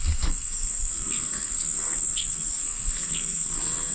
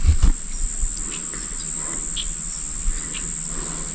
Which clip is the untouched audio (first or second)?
second